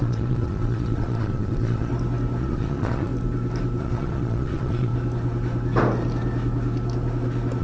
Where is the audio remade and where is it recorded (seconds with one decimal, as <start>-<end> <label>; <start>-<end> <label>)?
0.0-1.9 remade; 1.9-2.4 recorded; 2.4-3.1 remade; 3.1-3.8 recorded; 3.8-4.9 remade; 4.9-7.6 recorded